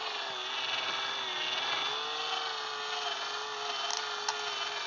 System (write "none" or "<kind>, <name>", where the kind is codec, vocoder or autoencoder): none